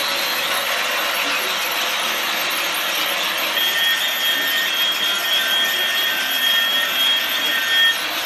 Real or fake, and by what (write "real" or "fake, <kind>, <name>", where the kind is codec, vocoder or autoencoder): real